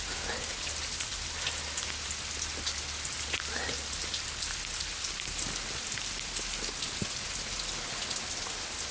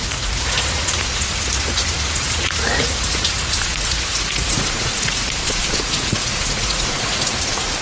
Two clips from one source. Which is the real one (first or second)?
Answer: first